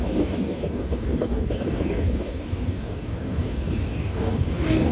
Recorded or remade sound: remade